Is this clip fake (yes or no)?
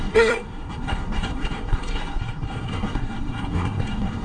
yes